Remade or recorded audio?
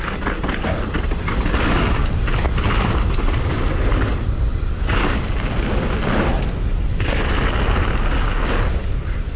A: recorded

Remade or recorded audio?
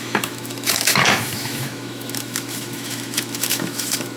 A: remade